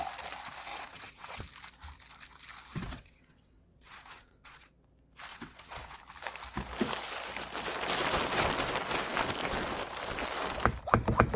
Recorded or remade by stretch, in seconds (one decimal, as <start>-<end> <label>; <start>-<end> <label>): 0.0-0.7 recorded; 0.7-1.4 remade; 1.4-2.7 recorded; 2.7-4.7 remade; 4.7-5.3 recorded; 5.3-6.0 remade; 6.0-11.4 recorded